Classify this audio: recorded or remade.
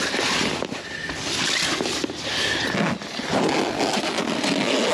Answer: recorded